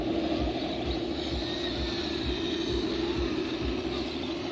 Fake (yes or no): no